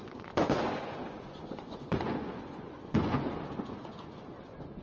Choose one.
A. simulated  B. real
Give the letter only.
A